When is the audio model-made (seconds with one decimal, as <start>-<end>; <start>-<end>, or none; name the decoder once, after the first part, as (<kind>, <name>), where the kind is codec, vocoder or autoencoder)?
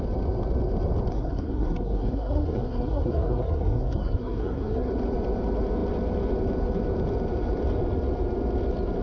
1.1-4.9 (codec, SNAC)